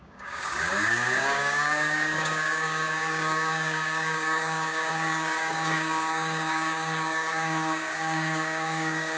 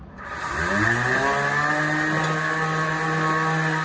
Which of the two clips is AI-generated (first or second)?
first